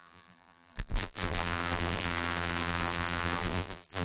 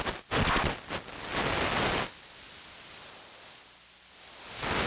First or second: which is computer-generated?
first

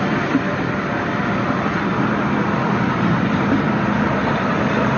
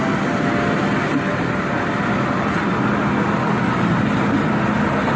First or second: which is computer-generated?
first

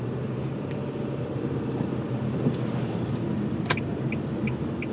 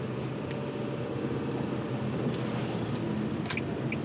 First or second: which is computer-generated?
first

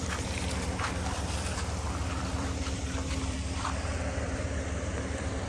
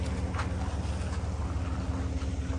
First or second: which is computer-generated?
first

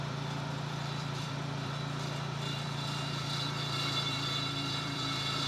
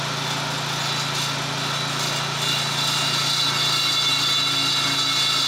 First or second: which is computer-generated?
first